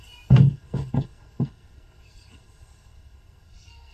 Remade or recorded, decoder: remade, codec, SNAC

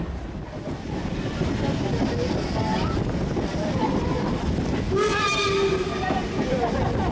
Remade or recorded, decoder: recorded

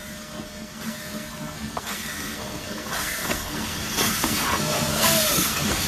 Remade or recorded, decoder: remade, codec, SNAC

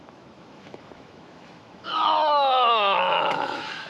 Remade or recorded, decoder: remade, autoencoder, DAC-VAE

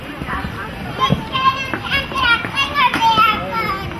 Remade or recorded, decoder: recorded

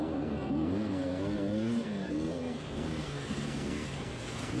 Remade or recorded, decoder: remade, codec, SNAC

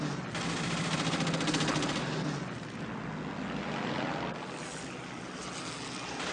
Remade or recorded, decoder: recorded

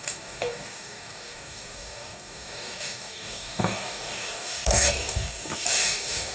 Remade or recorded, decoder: remade, codec, DAC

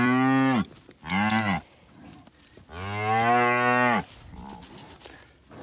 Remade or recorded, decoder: recorded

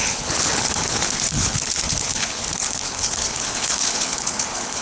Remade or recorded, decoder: remade, codec, HILCodec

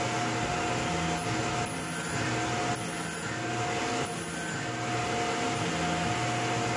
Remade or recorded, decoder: recorded